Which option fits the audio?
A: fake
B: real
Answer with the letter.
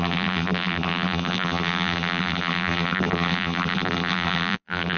A